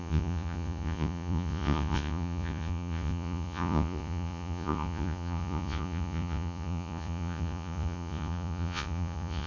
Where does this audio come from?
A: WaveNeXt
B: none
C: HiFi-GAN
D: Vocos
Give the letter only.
D